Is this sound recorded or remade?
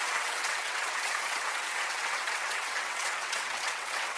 remade